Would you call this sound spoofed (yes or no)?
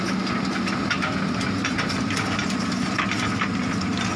no